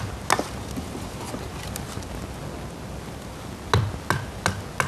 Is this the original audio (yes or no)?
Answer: yes